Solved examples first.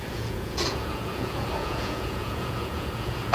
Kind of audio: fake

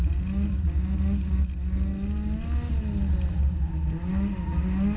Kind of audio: real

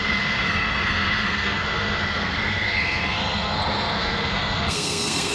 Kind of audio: fake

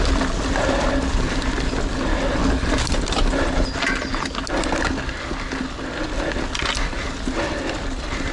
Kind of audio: real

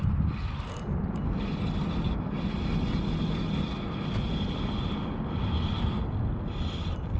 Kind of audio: real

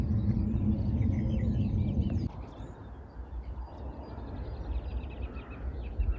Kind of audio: real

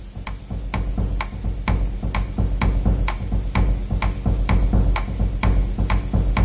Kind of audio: real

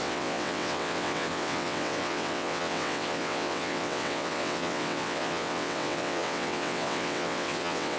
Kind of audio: fake